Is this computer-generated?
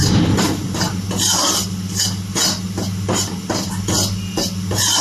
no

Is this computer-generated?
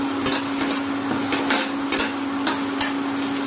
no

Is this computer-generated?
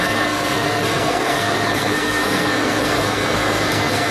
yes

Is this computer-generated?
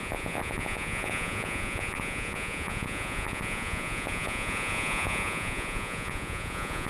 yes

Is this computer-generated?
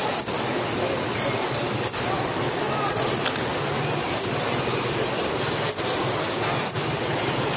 no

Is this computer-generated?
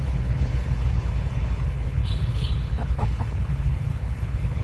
yes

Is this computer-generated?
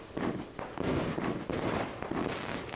no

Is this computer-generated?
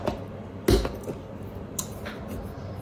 no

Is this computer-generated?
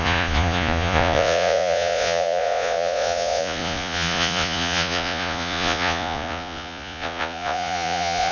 yes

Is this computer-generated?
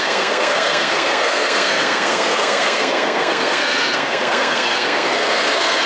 yes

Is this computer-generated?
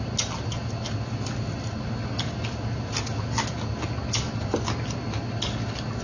no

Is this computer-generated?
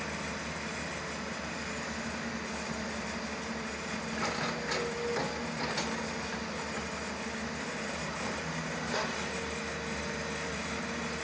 no